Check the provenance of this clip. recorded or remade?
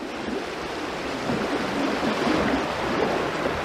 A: recorded